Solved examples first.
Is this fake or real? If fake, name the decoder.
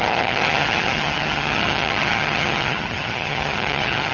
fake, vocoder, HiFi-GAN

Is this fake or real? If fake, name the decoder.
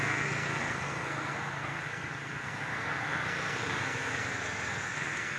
fake, codec, SNAC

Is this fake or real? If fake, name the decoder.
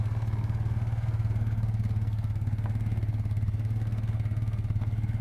fake, codec, SNAC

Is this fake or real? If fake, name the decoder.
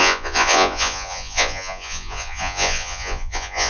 fake, vocoder, Vocos